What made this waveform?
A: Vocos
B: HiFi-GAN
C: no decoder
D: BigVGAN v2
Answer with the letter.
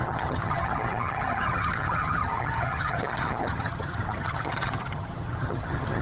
B